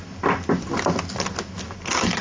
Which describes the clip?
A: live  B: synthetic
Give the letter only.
A